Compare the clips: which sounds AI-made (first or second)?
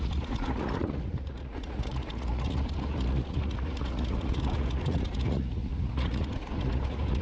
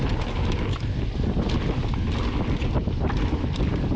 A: first